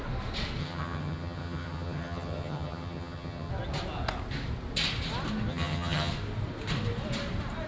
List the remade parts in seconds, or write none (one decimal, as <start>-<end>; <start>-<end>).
0.6-3.5; 5.5-6.1